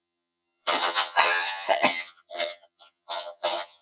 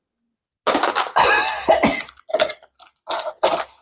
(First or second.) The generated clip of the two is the first